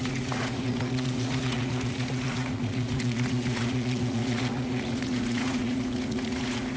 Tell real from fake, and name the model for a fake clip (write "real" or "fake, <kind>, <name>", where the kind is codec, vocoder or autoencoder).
fake, vocoder, Vocos